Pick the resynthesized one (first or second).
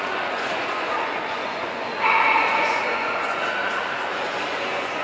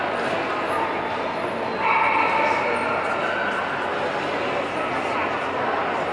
first